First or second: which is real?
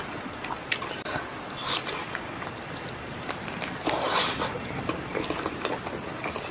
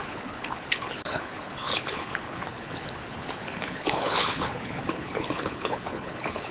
first